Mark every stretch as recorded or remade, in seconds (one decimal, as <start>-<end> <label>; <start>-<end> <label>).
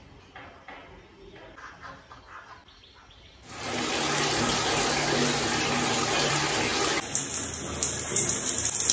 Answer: 0.0-8.9 recorded